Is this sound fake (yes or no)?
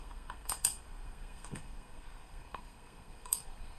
yes